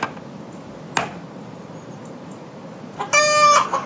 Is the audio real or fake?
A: real